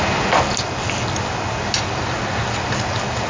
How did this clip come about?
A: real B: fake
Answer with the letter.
A